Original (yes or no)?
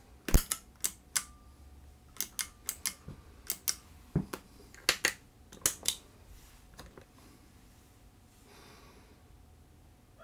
yes